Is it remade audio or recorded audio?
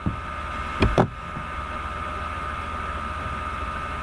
recorded